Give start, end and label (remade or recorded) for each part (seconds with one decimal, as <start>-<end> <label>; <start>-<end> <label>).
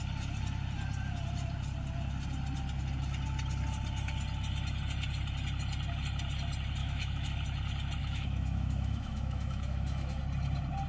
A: 0.0-6.8 recorded; 6.8-7.3 remade; 7.3-8.0 recorded; 8.0-10.2 remade; 10.2-10.9 recorded